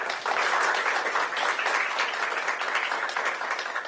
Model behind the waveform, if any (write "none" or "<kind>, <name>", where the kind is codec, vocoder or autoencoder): none